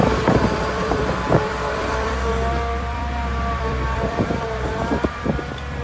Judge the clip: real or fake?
fake